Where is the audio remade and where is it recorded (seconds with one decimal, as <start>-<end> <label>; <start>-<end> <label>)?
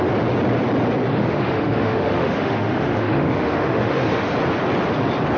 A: 0.0-1.1 recorded; 1.1-4.3 remade; 4.3-5.4 recorded